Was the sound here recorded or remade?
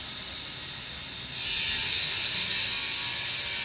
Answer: recorded